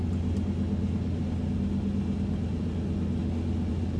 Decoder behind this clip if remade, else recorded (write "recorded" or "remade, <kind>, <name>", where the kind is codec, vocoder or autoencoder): recorded